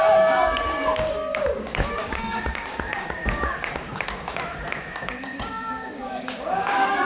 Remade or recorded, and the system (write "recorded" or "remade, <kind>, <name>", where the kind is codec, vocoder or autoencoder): remade, codec, DAC